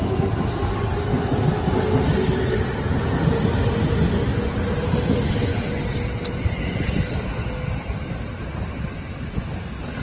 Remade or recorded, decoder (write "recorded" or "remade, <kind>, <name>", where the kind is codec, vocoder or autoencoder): recorded